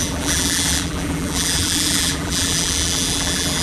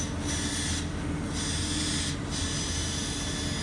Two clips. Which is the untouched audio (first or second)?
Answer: second